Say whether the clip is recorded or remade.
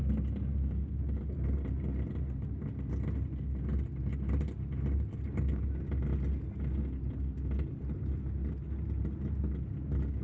recorded